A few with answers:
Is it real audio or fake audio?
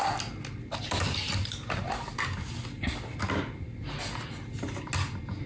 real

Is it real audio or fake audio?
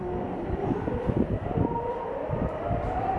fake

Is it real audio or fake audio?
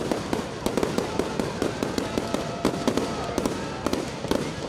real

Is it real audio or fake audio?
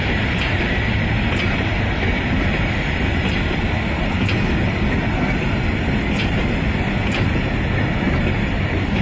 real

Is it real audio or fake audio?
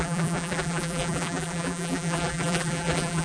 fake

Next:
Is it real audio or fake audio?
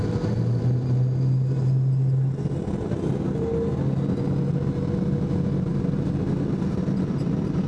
real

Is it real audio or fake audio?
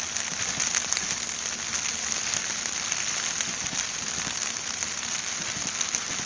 real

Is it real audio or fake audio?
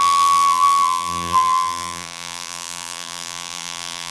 fake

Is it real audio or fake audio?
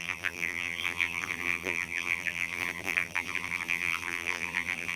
fake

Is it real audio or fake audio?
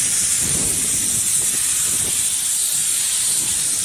fake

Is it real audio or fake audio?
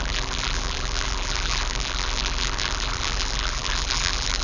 fake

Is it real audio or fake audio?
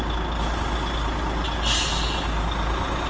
real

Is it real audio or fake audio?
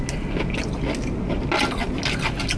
real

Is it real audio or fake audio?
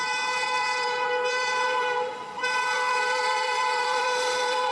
fake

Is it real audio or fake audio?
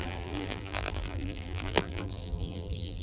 fake